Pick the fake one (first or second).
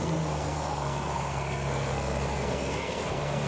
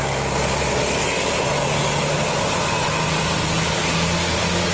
first